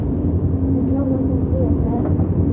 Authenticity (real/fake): fake